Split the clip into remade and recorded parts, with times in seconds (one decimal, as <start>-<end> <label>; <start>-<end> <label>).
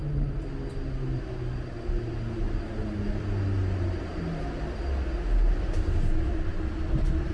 0.0-7.3 recorded